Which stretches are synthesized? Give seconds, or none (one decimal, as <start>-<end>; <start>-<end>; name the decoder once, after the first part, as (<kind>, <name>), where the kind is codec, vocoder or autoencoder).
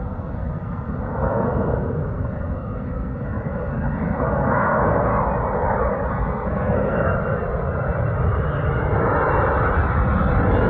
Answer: 0.0-5.1 (codec, SNAC); 6.1-7.1